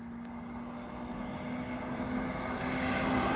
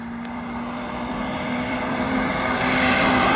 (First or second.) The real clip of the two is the first